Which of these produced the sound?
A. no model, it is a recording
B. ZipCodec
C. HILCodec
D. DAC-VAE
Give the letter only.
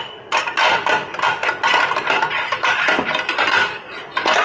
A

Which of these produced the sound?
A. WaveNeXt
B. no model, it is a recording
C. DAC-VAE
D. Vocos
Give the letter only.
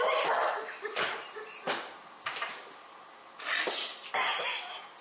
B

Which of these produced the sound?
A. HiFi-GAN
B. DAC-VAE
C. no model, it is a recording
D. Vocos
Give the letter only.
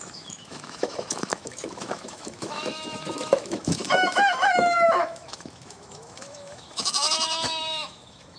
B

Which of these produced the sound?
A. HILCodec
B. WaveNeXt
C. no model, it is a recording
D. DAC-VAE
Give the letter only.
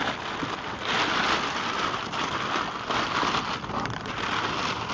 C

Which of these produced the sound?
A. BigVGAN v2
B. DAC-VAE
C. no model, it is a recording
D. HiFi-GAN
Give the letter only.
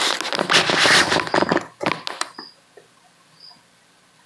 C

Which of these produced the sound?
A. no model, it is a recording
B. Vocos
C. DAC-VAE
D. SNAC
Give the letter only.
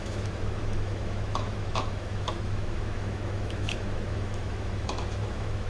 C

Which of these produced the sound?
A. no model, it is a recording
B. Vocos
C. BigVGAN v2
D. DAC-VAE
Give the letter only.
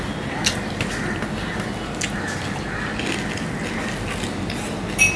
A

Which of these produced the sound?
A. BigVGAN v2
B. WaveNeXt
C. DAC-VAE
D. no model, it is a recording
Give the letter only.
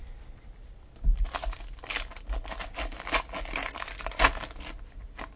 D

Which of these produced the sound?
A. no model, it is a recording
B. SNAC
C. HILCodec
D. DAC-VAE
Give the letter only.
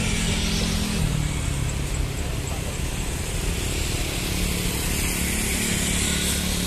A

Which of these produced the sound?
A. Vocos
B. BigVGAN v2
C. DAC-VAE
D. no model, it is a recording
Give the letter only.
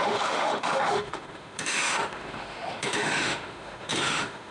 C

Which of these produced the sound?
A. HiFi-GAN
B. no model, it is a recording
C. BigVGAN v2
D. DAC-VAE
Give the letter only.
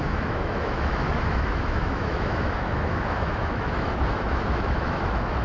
D